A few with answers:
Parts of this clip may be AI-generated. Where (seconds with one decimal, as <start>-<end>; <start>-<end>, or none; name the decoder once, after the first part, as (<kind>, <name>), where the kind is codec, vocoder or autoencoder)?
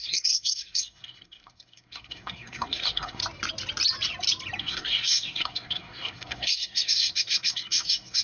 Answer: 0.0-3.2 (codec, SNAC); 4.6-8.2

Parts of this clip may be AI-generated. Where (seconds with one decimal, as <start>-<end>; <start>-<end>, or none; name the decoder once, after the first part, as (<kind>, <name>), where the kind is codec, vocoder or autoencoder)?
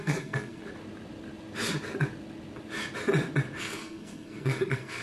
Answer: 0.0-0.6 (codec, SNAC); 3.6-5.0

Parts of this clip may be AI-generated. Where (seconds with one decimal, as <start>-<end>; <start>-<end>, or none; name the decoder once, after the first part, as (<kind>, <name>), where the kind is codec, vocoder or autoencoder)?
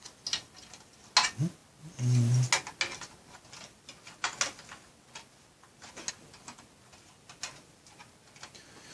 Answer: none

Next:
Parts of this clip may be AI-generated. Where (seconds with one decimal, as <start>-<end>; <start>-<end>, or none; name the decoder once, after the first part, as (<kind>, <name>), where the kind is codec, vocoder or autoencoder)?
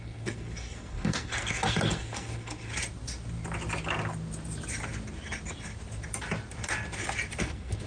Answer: 0.0-2.7 (codec, SNAC); 7.4-7.9